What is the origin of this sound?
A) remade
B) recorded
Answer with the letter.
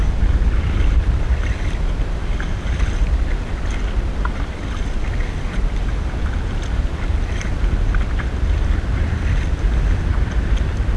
B